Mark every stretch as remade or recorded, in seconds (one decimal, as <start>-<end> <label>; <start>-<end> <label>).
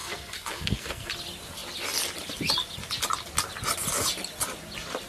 0.0-1.1 remade; 1.1-5.1 recorded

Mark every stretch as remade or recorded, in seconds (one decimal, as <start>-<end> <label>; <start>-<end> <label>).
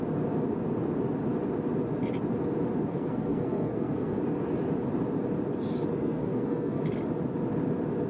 0.0-2.9 recorded; 2.9-4.2 remade; 4.2-5.9 recorded; 5.9-6.8 remade; 6.8-8.1 recorded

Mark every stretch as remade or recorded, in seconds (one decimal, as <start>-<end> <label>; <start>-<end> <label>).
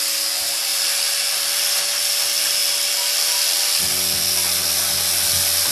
0.0-5.7 recorded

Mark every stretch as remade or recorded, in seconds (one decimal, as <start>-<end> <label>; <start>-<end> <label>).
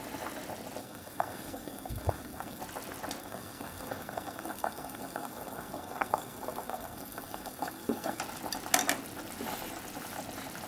0.0-0.8 recorded; 0.8-2.6 remade; 2.6-3.2 recorded; 3.2-8.2 remade; 8.2-10.7 recorded